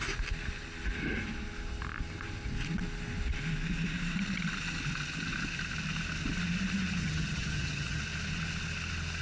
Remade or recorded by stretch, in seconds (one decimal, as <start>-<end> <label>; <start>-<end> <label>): 0.0-7.0 recorded; 7.0-8.0 remade; 8.0-9.2 recorded